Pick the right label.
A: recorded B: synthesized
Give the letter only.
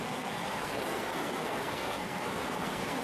B